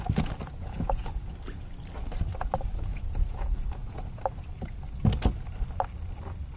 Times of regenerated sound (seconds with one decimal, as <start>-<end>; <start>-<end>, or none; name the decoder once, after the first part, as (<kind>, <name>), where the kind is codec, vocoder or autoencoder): 0.6-1.3 (vocoder, Vocos); 2.9-4.2